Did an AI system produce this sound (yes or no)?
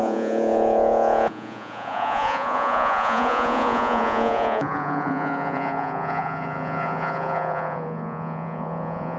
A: yes